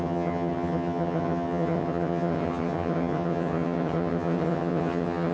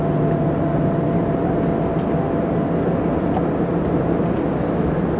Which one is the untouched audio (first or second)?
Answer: second